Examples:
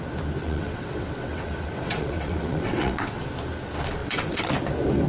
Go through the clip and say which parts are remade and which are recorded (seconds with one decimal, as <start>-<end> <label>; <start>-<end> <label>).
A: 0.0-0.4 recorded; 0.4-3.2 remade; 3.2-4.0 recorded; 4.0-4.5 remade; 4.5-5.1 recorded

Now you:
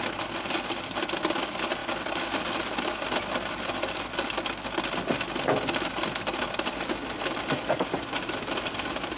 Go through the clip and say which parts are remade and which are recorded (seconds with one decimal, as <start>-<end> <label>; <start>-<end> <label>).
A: 0.0-9.2 recorded

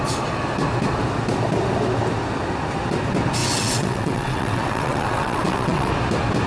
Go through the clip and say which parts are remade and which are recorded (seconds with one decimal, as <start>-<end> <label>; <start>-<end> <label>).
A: 0.0-3.4 recorded; 3.4-5.9 remade; 5.9-6.5 recorded

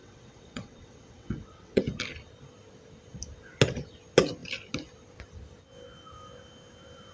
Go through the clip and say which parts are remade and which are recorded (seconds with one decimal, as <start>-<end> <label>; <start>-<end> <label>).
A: 0.0-1.8 remade; 1.8-7.1 recorded

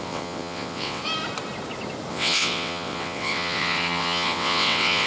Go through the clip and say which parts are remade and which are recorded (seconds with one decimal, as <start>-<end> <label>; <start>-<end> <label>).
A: 0.0-1.0 remade; 1.0-2.1 recorded; 2.1-5.1 remade